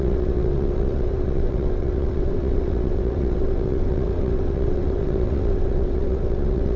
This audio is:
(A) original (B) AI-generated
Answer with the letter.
B